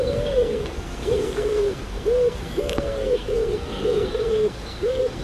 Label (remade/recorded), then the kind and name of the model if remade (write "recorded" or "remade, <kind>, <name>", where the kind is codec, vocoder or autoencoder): remade, codec, SNAC